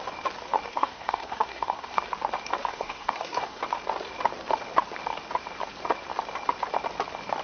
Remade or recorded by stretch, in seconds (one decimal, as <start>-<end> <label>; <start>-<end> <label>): 0.0-0.7 recorded; 0.7-2.0 remade; 2.0-2.7 recorded; 2.7-3.6 remade; 3.6-7.4 recorded